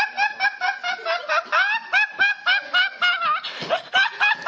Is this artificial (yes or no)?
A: no